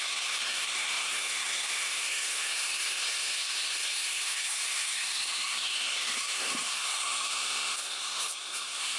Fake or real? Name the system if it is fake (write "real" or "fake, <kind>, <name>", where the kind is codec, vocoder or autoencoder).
fake, codec, SNAC